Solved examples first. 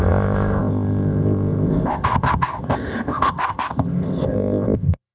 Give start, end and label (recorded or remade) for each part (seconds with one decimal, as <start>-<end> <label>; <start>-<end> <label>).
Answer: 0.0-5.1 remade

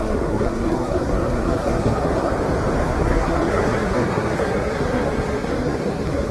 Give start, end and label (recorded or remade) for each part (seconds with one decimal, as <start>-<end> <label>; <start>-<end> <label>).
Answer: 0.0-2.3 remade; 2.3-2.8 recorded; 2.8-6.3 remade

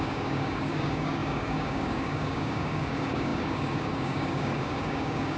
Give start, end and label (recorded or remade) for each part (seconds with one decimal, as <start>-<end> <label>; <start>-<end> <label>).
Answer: 0.0-5.4 remade

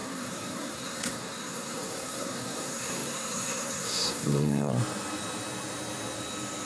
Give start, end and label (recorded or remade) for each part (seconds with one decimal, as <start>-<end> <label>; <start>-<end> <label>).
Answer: 0.0-4.7 remade; 4.7-6.7 recorded